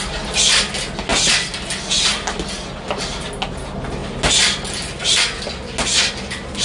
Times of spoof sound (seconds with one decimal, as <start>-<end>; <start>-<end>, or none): none